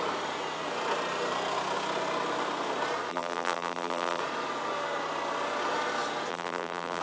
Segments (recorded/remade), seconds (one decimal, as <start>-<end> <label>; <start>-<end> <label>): 0.0-3.1 recorded; 3.1-4.2 remade; 4.2-6.3 recorded; 6.3-7.0 remade